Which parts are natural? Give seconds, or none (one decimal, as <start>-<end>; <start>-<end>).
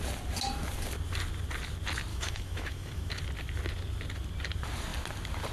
0.0-2.1; 3.1-5.5